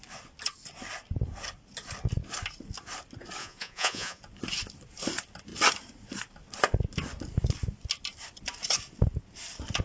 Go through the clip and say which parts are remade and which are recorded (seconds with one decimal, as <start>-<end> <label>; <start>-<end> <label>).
0.0-3.4 recorded; 3.4-4.2 remade; 4.2-9.8 recorded